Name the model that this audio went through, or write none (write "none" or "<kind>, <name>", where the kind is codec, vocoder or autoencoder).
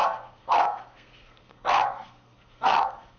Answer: codec, SNAC